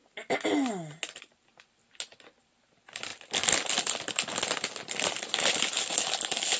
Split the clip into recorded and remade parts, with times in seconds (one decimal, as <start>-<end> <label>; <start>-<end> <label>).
0.0-6.6 recorded